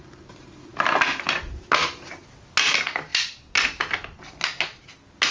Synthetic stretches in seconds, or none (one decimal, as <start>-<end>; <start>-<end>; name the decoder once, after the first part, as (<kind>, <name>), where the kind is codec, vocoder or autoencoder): none